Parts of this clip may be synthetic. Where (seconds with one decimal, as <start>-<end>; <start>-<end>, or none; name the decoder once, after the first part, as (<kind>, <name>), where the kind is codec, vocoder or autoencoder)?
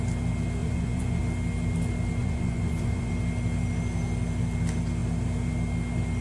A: 0.6-1.2 (vocoder, Vocos); 2.2-3.1